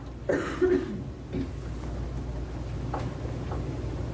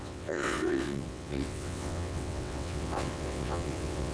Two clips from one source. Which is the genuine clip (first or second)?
first